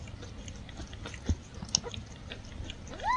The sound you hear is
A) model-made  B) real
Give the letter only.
B